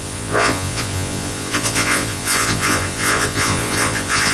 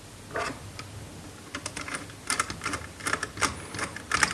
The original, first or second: second